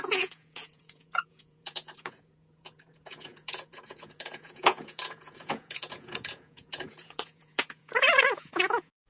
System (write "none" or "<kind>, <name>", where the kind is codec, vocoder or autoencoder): vocoder, Vocos